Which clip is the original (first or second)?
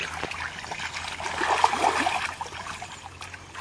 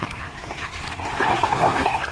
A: first